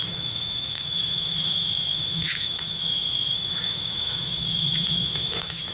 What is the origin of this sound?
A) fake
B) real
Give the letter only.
A